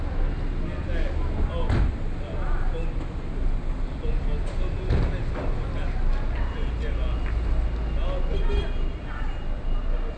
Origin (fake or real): real